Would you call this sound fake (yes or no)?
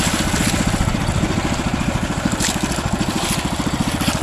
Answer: no